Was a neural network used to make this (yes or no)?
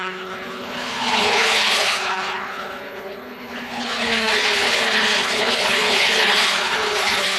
yes